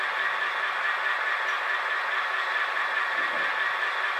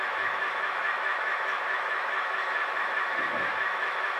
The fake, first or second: second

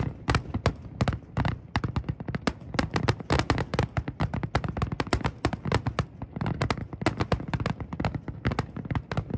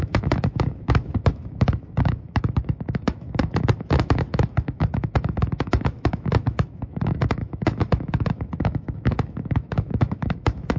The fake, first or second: second